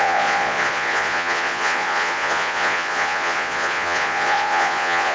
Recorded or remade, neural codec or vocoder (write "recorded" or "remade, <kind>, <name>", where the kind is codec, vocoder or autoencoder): remade, vocoder, Vocos